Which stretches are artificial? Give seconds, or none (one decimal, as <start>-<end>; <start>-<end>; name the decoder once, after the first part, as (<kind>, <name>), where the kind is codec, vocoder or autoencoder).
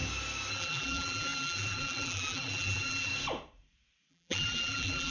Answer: 0.5-3.1 (vocoder, BigVGAN v2); 4.1-5.1